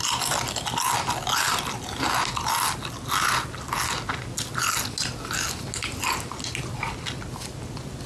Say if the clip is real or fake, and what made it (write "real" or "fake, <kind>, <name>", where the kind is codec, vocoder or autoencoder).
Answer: real